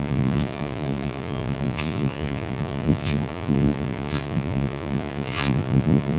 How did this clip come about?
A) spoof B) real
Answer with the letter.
A